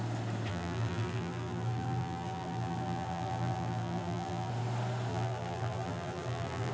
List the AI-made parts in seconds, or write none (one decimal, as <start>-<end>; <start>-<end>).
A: 0.5-4.5; 5.1-6.7